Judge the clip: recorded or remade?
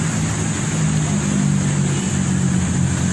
recorded